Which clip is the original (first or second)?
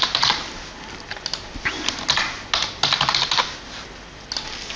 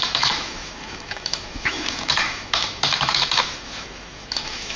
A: first